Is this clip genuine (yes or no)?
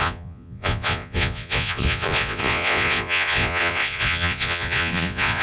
no